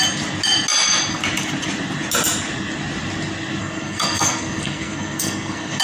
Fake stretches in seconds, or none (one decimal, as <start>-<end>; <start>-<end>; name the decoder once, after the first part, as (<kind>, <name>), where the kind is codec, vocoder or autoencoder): 3.6-5.8 (codec, SNAC)